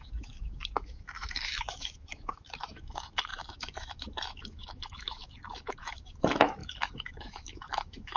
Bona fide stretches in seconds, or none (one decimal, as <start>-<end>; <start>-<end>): none